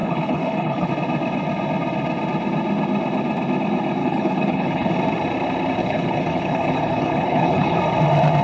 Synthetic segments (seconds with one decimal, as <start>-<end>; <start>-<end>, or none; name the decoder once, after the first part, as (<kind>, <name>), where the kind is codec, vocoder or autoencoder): 0.0-0.9 (codec, HILCodec); 4.0-4.9; 5.8-7.8